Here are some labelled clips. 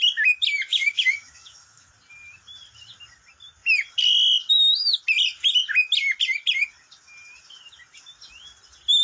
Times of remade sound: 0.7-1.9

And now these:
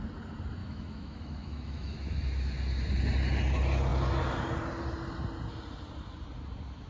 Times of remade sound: 0.6-2.2

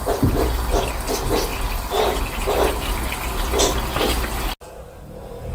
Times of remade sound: none